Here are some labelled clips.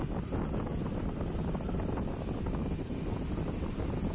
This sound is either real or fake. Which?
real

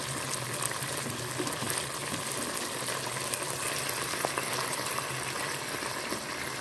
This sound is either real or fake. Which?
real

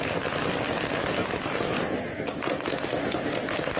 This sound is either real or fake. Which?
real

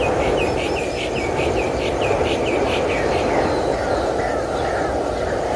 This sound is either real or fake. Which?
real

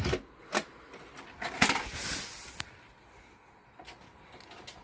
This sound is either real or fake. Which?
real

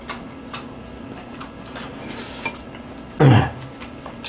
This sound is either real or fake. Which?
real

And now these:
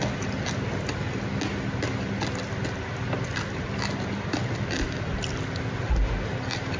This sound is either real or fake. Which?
real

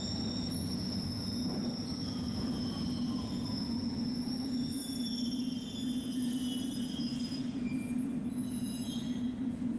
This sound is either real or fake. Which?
fake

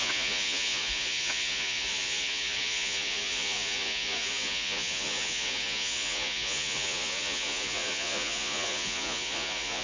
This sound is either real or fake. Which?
fake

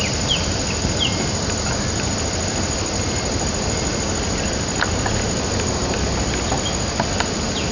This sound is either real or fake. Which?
real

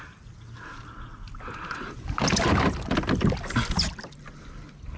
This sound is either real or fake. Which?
real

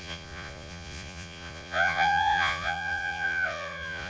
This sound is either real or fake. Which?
fake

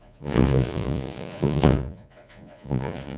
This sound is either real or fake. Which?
fake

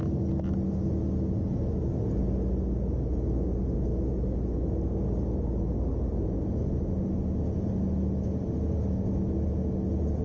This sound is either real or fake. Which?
real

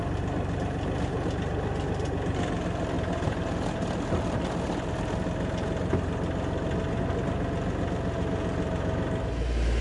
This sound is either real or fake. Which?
real